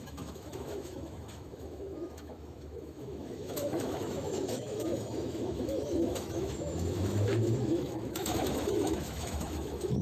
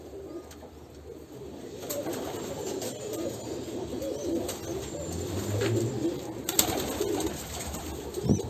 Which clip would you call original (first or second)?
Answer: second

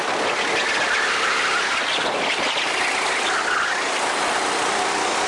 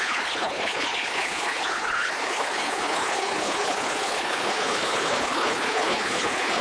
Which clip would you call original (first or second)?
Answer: first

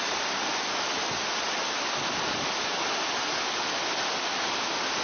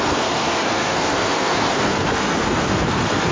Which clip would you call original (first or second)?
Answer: first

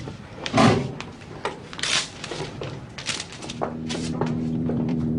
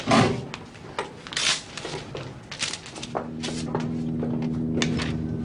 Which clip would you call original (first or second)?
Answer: second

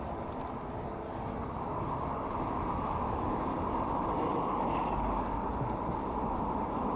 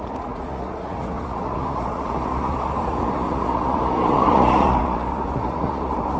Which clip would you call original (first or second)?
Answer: first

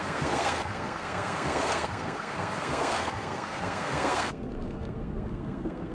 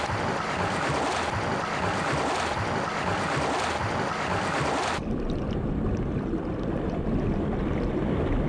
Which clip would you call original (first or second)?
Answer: second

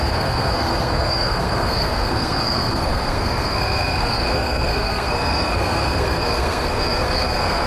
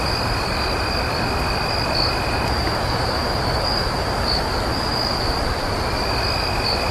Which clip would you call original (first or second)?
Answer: second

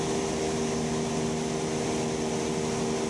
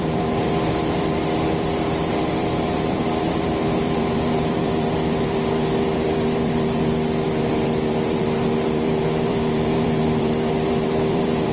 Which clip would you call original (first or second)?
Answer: first